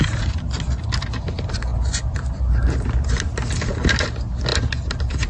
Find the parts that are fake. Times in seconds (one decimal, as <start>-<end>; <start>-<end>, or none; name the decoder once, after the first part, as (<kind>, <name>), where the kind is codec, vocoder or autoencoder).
none